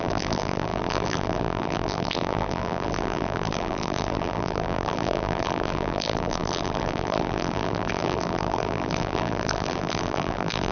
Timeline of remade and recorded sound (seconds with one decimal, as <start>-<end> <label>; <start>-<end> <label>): 0.0-10.7 remade